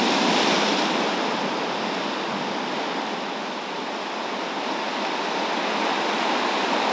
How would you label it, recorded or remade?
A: recorded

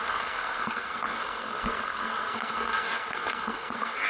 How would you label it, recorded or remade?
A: remade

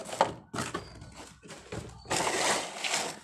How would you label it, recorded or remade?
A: recorded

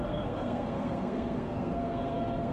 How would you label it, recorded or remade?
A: remade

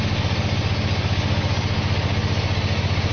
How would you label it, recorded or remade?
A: recorded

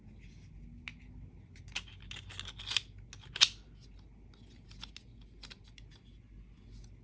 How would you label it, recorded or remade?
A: recorded